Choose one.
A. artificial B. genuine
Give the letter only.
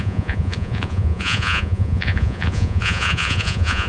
A